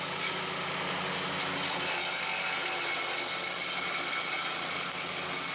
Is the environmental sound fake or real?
real